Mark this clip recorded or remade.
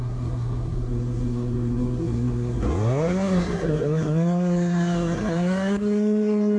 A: remade